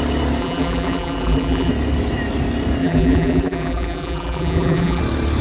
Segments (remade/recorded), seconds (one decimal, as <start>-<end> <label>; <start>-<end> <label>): 0.0-0.4 recorded; 0.4-1.7 remade; 1.7-2.8 recorded; 2.8-5.0 remade; 5.0-5.4 recorded